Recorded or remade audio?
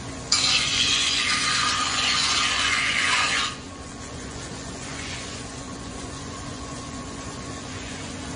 remade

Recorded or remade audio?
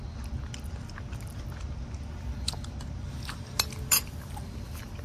recorded